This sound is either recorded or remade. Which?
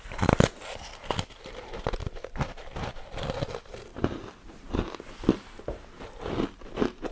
recorded